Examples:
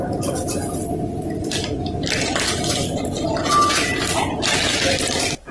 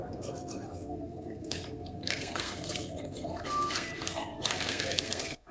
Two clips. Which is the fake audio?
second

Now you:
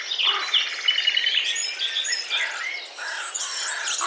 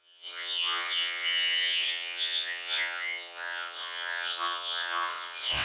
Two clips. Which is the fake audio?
second